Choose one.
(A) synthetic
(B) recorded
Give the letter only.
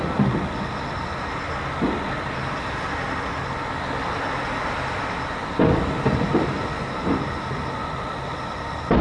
B